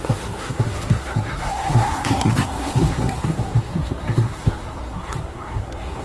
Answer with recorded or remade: remade